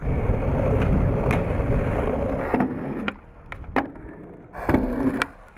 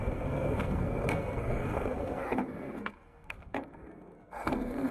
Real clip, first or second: first